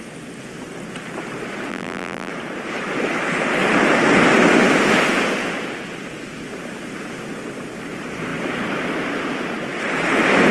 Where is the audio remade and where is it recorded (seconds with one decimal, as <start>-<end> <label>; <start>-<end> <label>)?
0.0-1.7 recorded; 1.7-2.3 remade; 2.3-10.5 recorded